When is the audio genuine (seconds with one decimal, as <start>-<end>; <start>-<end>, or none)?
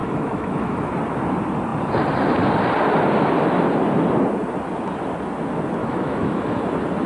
0.9-5.8; 6.6-7.1